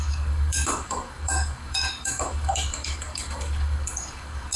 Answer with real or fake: fake